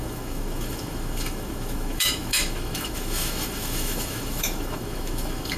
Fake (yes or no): yes